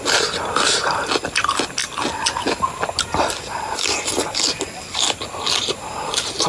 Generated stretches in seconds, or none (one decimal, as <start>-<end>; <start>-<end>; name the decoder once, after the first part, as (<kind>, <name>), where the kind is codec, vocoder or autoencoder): none